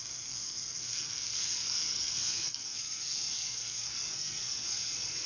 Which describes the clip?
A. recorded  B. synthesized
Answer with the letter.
B